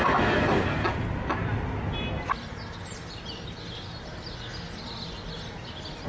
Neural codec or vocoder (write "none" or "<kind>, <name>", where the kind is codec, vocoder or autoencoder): none